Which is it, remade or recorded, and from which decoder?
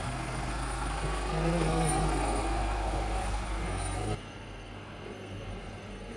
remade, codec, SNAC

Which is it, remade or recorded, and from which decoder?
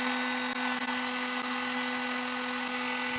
recorded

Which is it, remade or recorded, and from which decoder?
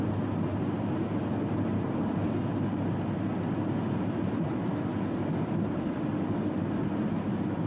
recorded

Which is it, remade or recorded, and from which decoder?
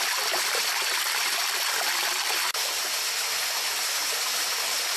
recorded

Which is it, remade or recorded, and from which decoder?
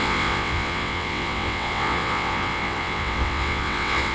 remade, vocoder, WaveNeXt